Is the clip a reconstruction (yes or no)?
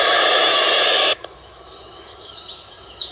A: yes